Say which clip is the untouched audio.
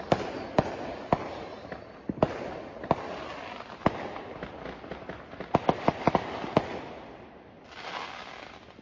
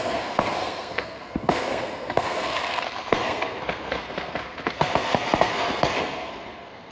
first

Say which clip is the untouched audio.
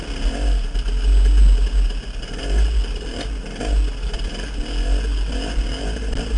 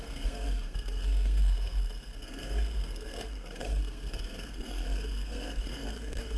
first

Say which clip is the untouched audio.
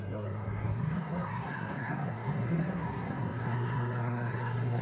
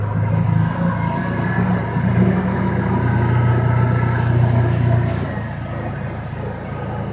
second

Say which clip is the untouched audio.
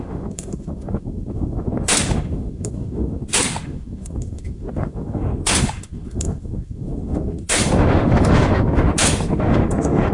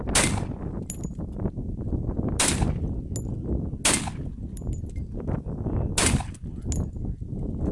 second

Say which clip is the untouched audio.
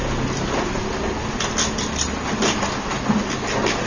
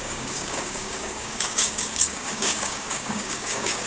first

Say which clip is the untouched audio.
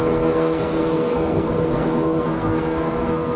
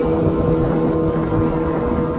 second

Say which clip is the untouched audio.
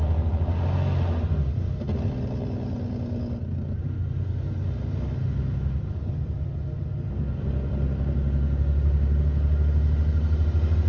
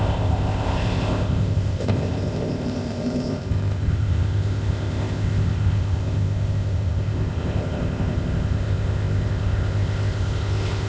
first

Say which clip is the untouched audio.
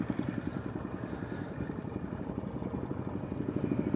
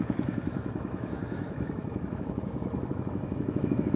first